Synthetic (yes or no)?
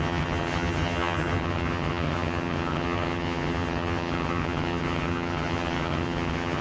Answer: yes